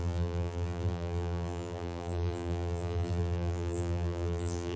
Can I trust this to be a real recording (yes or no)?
no